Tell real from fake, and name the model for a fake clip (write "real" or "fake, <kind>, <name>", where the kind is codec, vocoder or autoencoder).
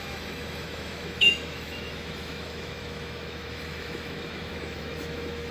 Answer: fake, autoencoder, DAC-VAE